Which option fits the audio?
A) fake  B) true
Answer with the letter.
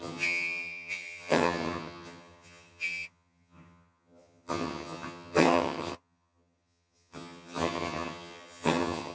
A